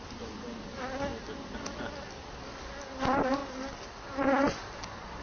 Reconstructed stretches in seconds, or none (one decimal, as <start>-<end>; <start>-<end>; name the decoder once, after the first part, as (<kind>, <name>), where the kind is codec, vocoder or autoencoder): 3.4-4.0 (vocoder, BigVGAN v2)